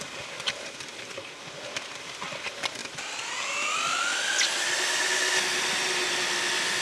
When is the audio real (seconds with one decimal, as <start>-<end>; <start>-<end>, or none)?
0.0-6.8